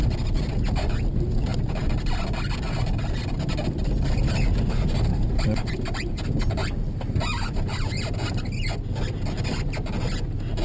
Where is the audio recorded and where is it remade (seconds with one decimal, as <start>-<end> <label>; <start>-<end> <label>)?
0.0-5.1 recorded; 5.1-6.1 remade; 6.1-10.6 recorded